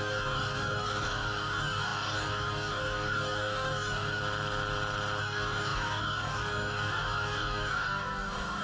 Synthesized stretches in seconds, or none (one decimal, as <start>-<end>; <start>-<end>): 0.0-4.2; 5.2-8.6